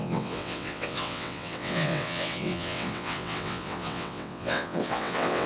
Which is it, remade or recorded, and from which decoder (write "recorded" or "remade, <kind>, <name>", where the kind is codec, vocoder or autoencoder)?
remade, vocoder, WaveNeXt